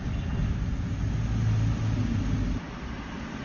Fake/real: real